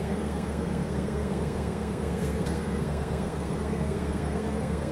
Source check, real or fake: fake